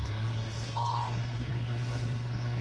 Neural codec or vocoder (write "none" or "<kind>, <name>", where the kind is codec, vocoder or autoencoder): codec, SNAC